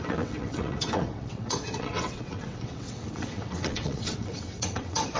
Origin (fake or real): fake